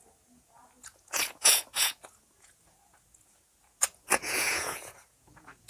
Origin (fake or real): fake